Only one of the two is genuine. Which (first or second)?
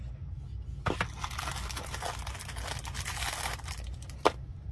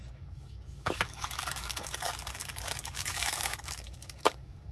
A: first